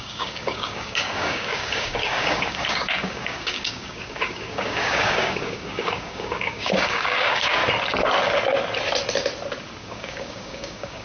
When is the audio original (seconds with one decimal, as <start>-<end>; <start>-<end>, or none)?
7.6-9.8

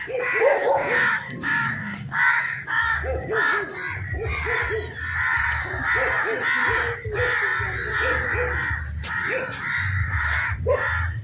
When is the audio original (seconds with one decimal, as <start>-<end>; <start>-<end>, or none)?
3.7-11.2

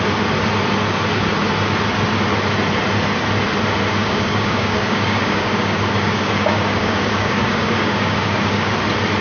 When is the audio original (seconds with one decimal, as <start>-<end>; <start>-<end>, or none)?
0.0-4.0; 8.7-9.2